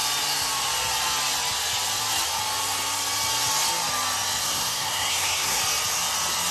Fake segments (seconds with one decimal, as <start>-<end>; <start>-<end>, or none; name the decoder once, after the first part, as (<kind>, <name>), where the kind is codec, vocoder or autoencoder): 4.4-5.6 (codec, SNAC)